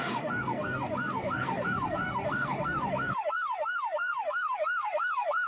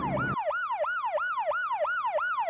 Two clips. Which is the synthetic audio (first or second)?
first